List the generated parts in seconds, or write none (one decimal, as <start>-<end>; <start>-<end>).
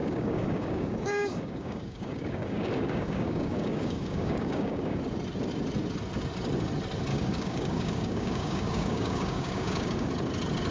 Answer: 0.0-5.0; 7.1-10.1